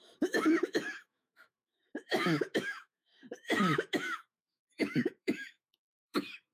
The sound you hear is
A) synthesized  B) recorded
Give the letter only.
A